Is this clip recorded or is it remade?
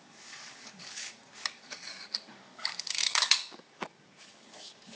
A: remade